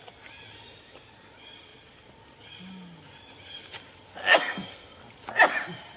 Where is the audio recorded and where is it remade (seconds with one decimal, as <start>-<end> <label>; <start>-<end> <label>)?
0.0-4.2 recorded; 4.2-5.0 remade; 5.0-6.0 recorded